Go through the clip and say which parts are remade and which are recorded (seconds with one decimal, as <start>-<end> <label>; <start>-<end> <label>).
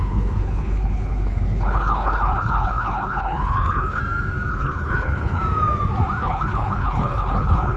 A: 0.0-4.0 remade; 4.0-4.5 recorded; 4.5-5.4 remade; 5.4-6.2 recorded; 6.2-7.8 remade